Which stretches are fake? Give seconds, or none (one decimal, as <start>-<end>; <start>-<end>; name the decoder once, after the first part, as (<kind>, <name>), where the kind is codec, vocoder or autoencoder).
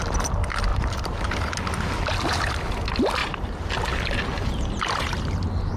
0.7-1.4 (vocoder, BigVGAN v2); 3.2-3.7